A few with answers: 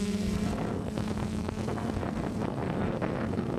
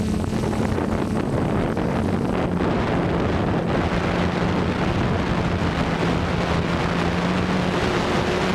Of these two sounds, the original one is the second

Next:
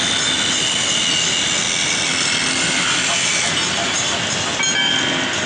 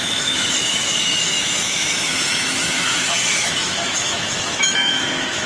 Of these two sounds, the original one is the first